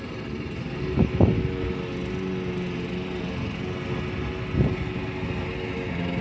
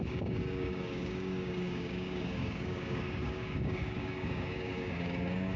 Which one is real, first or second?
first